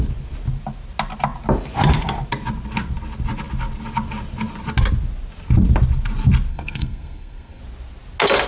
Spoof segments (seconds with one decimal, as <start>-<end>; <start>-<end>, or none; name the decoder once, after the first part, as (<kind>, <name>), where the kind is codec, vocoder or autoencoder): 6.5-7.6 (codec, SNAC)